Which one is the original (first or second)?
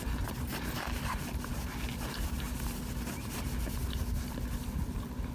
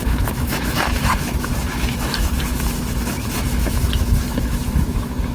first